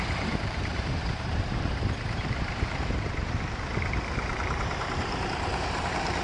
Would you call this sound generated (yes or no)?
yes